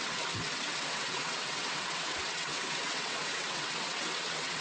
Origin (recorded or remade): remade